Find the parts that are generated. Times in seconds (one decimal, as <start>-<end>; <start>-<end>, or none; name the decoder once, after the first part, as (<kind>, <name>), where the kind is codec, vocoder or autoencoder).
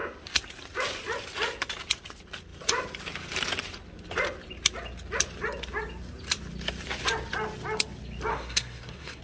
8.3-9.2 (codec, SNAC)